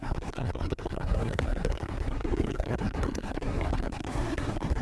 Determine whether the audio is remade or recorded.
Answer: remade